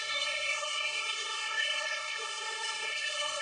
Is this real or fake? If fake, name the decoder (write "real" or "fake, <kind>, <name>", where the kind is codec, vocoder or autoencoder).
fake, codec, SNAC